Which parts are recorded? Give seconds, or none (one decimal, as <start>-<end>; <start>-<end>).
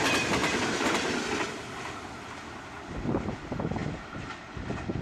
0.0-5.0